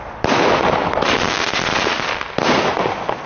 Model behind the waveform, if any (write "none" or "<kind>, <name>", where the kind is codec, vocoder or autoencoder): none